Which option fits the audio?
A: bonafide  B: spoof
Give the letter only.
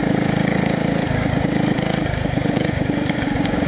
B